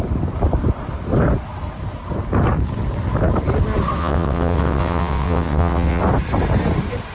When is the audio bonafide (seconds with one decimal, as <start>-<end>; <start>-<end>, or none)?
0.0-4.0; 6.0-7.1